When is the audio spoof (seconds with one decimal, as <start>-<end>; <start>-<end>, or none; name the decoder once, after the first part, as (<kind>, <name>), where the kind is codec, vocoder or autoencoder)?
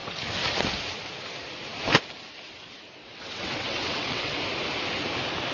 3.0-4.4 (vocoder, WaveNeXt)